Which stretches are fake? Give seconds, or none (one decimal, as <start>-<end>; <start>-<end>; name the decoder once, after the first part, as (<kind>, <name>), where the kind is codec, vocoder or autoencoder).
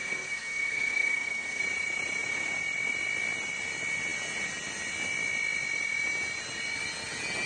0.0-1.6 (codec, SNAC)